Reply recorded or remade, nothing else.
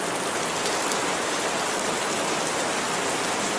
recorded